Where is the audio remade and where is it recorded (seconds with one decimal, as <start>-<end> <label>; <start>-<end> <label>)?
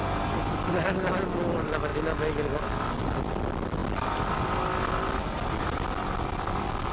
0.0-6.9 recorded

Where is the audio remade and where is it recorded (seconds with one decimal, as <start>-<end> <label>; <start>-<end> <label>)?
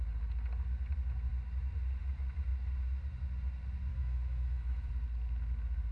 0.0-3.9 recorded; 3.9-4.9 remade; 4.9-5.9 recorded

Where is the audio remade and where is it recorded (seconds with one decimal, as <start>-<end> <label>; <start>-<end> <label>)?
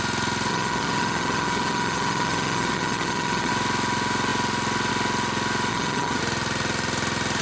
0.0-0.5 recorded; 0.5-3.5 remade; 3.5-5.7 recorded; 5.7-6.2 remade; 6.2-7.4 recorded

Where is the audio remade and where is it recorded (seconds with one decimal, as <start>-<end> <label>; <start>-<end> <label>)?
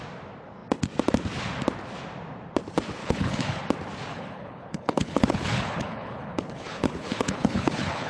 0.0-3.0 recorded; 3.0-3.6 remade; 3.6-4.1 recorded; 4.1-8.1 remade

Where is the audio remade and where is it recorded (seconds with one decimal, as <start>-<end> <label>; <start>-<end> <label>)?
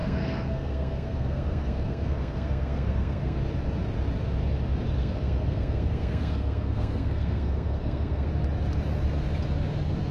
0.0-3.4 remade; 3.4-5.0 recorded; 5.0-8.3 remade; 8.3-10.1 recorded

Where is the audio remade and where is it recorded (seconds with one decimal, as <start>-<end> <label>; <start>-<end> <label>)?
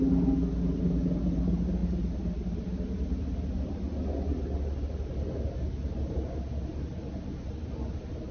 0.0-8.3 recorded